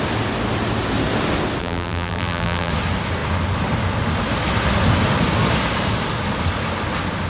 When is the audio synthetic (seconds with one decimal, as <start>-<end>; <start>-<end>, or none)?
1.6-2.7